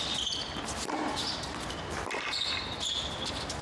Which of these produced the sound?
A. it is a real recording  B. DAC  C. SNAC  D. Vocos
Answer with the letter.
A